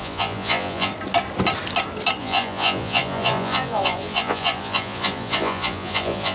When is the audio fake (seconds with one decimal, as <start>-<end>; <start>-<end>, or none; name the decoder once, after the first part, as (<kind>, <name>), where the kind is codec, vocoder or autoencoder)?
0.0-0.9 (vocoder, Vocos); 2.2-6.3

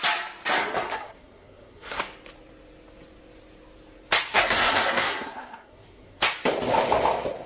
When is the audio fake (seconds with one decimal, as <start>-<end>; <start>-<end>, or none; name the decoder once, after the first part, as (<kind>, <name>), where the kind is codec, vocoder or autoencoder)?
0.9-2.0 (codec, SNAC); 4.3-6.2

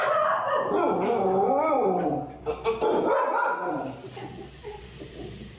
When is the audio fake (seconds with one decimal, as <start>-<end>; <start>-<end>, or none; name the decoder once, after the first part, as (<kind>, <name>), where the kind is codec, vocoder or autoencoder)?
none

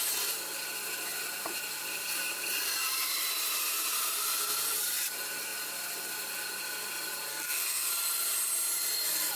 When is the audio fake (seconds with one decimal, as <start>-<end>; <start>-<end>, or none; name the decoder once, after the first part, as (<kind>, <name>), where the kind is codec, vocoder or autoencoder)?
7.3-7.9 (codec, SNAC)